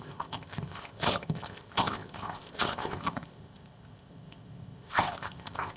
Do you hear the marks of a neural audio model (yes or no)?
yes